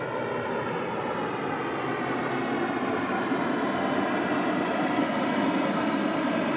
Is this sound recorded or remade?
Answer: recorded